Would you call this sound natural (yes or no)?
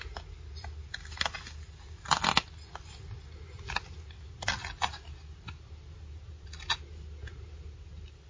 yes